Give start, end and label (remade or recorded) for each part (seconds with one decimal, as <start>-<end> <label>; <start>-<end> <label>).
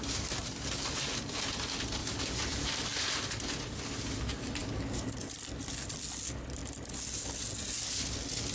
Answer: 0.0-2.0 recorded; 2.0-2.8 remade; 2.8-8.5 recorded